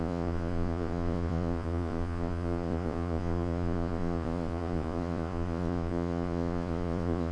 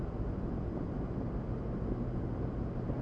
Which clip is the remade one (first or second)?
first